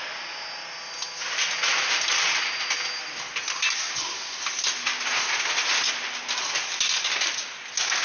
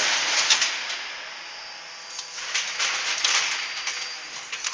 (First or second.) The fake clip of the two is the second